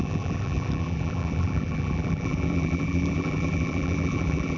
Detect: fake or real fake